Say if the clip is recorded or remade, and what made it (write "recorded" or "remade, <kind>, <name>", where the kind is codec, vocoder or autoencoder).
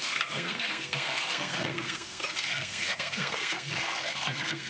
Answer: remade, codec, SNAC